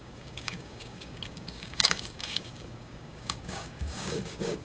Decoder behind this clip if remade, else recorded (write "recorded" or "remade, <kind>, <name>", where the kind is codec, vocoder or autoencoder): remade, codec, DAC